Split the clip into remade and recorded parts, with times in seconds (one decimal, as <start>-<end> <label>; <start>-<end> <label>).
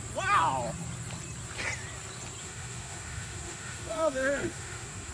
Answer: 0.0-2.4 recorded; 2.4-5.1 remade